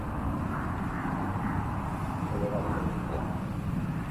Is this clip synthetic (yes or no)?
yes